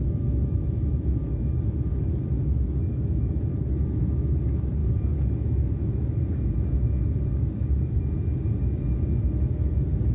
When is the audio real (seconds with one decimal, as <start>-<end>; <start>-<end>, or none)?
none